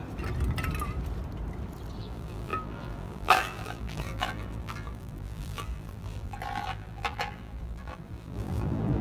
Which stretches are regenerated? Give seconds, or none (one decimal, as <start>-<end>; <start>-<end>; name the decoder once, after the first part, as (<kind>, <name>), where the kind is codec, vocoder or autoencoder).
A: 2.0-9.0 (vocoder, BigVGAN v2)